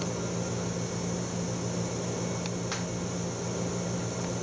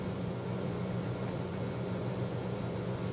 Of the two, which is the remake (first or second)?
second